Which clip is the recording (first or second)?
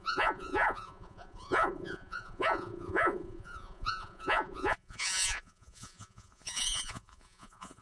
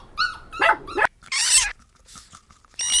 second